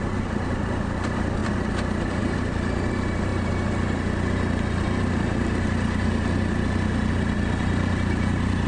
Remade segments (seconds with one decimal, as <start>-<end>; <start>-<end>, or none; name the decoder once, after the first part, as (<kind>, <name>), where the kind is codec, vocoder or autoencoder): none